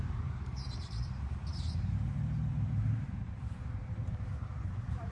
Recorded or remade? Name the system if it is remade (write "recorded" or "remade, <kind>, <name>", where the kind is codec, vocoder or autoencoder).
remade, vocoder, BigVGAN v2